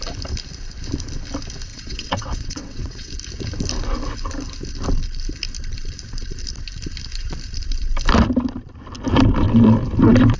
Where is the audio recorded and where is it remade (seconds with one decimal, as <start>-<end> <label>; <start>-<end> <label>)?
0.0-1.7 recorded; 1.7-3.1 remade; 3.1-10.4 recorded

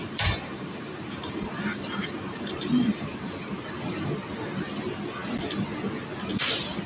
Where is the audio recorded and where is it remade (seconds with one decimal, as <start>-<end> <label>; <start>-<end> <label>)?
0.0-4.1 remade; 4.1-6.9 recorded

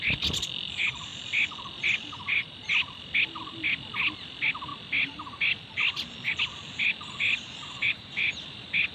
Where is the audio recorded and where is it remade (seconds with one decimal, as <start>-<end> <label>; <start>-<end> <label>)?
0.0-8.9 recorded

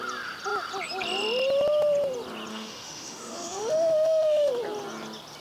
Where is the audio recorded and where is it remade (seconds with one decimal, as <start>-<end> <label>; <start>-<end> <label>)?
0.0-2.5 recorded; 2.5-4.5 remade; 4.5-5.4 recorded

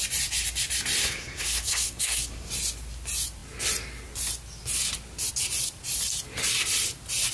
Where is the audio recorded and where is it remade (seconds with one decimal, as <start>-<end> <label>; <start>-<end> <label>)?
0.0-1.0 recorded; 1.0-2.5 remade; 2.5-7.3 recorded

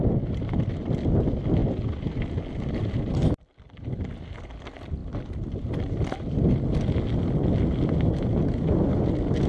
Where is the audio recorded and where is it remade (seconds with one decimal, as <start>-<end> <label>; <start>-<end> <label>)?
0.0-1.6 recorded; 1.6-3.6 remade; 3.6-9.5 recorded